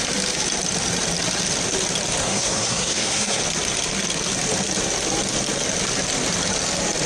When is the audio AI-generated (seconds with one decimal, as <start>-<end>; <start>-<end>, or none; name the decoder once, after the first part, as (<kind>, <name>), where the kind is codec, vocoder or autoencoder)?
2.2-3.4 (codec, SNAC)